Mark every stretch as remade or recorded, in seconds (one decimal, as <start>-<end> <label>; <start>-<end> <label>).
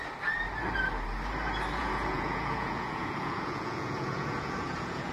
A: 0.0-1.8 recorded; 1.8-5.1 remade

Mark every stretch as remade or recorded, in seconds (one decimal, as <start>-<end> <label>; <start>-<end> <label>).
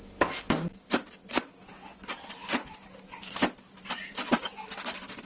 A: 0.0-5.3 recorded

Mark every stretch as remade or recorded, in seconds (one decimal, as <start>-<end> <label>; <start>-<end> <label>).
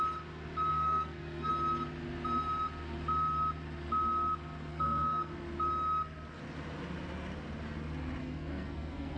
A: 0.0-0.7 recorded; 0.7-1.5 remade; 1.5-4.7 recorded; 4.7-5.3 remade; 5.3-8.2 recorded; 8.2-9.2 remade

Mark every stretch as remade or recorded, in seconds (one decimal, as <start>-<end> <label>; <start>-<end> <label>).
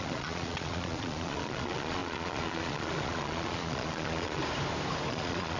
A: 0.0-4.4 remade; 4.4-5.1 recorded; 5.1-5.6 remade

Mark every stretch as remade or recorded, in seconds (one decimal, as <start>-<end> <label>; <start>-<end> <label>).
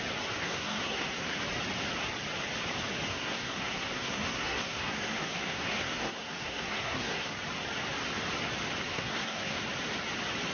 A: 0.0-0.4 recorded; 0.4-1.4 remade; 1.4-3.1 recorded; 3.1-7.3 remade; 7.3-8.9 recorded; 8.9-9.6 remade; 9.6-10.5 recorded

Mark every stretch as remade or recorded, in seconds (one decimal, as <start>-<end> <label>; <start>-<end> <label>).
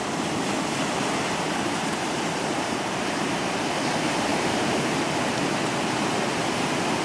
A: 0.0-3.3 remade; 3.3-4.3 recorded; 4.3-6.4 remade; 6.4-7.0 recorded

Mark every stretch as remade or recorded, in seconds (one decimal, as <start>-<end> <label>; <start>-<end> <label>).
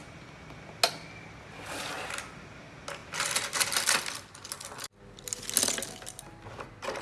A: 0.0-7.0 recorded